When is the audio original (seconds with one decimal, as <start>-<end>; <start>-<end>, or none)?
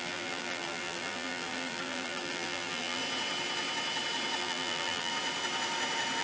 3.0-4.4; 5.1-6.2